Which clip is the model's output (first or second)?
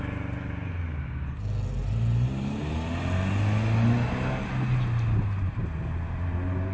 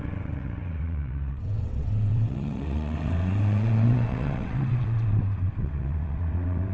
second